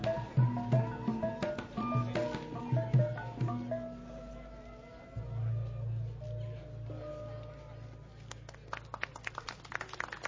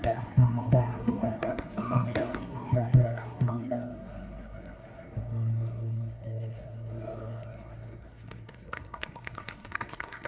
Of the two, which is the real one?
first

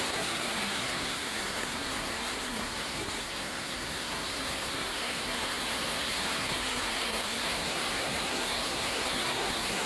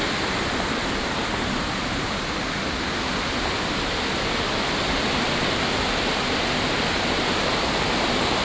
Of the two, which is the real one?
second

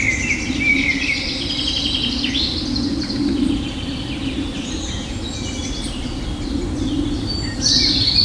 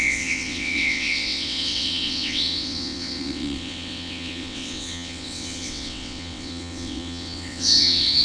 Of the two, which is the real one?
first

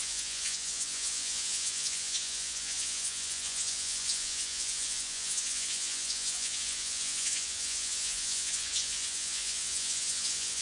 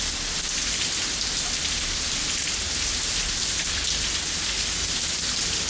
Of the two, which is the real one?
second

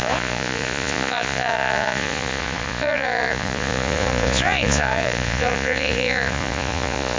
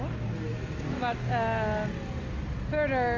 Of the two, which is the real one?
second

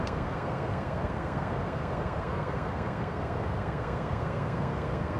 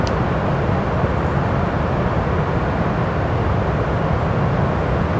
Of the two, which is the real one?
second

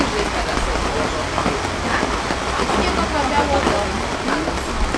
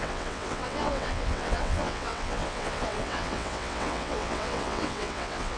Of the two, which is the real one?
first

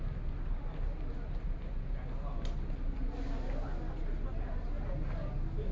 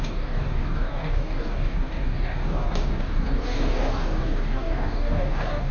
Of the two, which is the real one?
first